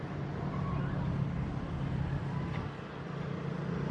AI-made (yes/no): no